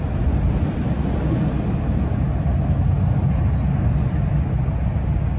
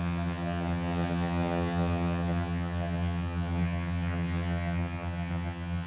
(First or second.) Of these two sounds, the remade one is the second